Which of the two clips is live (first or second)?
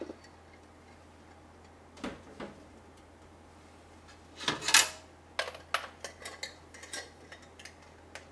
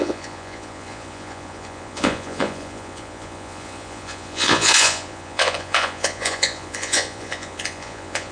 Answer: first